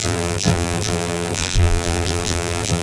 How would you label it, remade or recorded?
remade